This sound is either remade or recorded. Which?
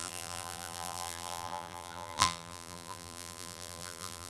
remade